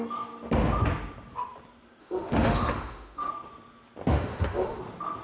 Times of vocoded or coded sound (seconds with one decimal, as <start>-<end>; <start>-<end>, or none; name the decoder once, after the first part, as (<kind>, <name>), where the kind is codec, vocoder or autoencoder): 2.0-3.3 (autoencoder, DAC-VAE); 4.1-4.8